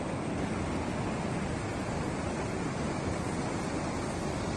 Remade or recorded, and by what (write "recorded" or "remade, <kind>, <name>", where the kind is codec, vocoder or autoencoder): recorded